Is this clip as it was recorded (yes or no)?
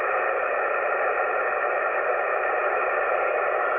yes